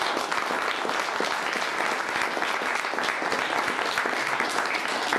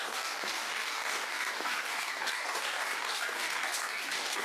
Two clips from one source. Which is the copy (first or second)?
second